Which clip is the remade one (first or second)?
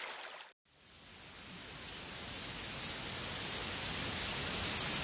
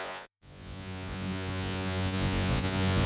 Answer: second